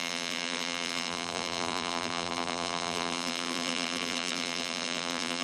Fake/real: fake